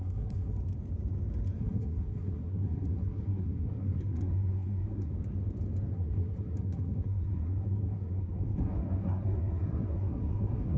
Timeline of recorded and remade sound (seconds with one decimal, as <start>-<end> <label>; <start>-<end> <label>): 0.0-0.6 remade; 0.6-1.6 recorded; 1.6-5.1 remade; 5.1-5.9 recorded; 5.9-10.8 remade